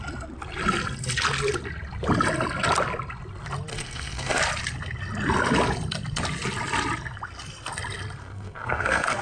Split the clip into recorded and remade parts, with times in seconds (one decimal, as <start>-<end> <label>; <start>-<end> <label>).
0.0-3.7 recorded; 3.7-4.4 remade; 4.4-8.2 recorded; 8.2-9.2 remade